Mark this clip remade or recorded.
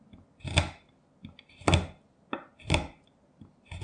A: recorded